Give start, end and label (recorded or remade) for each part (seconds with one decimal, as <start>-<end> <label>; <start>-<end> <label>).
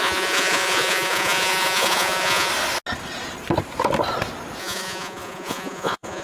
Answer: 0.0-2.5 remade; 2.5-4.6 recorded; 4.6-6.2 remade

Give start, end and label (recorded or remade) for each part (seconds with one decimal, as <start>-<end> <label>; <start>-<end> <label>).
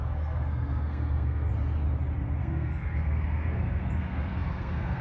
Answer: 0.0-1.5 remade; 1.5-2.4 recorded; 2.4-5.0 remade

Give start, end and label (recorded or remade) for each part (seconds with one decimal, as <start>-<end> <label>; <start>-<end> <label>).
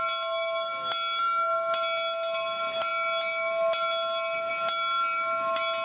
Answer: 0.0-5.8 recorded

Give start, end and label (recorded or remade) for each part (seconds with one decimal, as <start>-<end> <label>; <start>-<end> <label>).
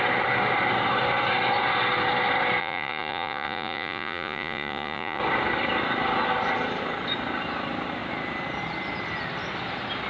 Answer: 0.0-2.6 recorded; 2.6-5.2 remade; 5.2-10.1 recorded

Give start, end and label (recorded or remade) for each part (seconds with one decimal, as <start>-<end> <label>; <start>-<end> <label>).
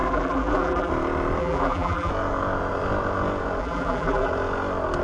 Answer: 0.0-0.9 remade; 0.9-1.4 recorded; 1.4-2.1 remade; 2.1-3.6 recorded; 3.6-4.3 remade; 4.3-5.0 recorded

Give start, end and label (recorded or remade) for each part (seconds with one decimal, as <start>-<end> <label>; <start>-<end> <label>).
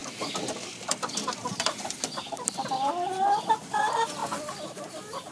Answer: 0.0-4.2 remade; 4.2-5.3 recorded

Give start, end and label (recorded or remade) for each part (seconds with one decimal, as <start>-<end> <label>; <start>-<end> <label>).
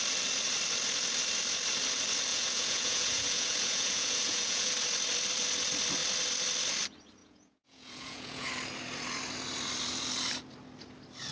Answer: 0.0-2.3 recorded; 2.3-4.7 remade; 4.7-7.2 recorded; 7.2-8.5 remade; 8.5-11.3 recorded